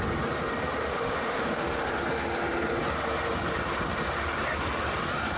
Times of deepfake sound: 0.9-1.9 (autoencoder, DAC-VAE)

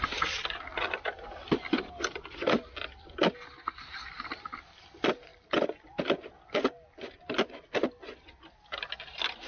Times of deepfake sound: none

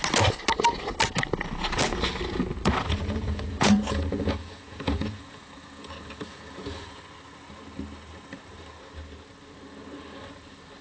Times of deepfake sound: 3.0-7.0 (vocoder, Vocos)

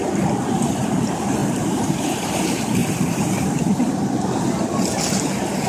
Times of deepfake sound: 1.4-2.4 (vocoder, BigVGAN v2); 2.8-3.8

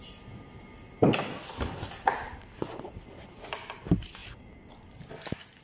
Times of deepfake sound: none

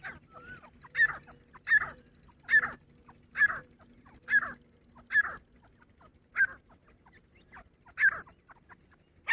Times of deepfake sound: none